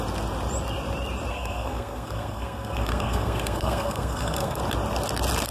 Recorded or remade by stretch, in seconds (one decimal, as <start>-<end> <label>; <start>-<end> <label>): 0.0-1.3 recorded; 1.3-4.6 remade; 4.6-5.5 recorded